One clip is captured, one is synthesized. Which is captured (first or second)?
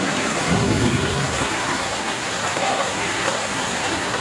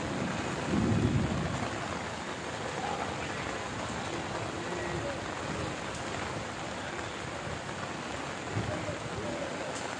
second